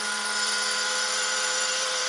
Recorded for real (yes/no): no